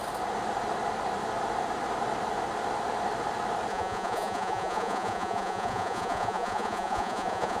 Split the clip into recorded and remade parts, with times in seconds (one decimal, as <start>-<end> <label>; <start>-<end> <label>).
0.0-3.7 recorded; 3.7-7.6 remade